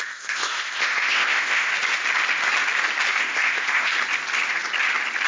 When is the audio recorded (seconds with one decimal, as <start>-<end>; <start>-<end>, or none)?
1.7-3.2; 3.9-5.3